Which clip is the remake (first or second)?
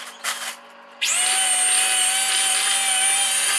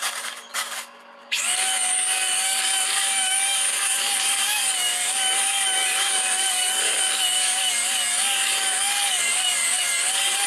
second